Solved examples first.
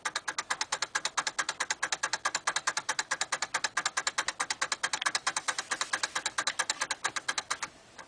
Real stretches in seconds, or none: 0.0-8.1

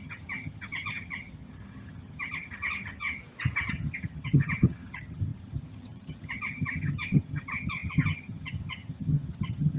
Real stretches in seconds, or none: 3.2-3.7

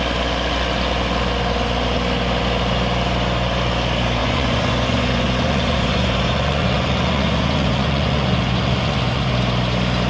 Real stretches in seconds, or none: 0.0-4.2; 9.3-10.1

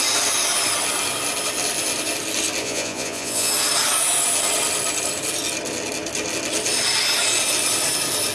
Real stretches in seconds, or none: 0.0-2.6; 3.5-8.3

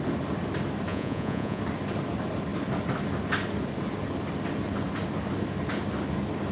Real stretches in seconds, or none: 0.0-0.9; 1.6-6.5